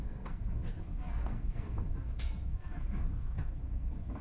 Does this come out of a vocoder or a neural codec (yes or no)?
yes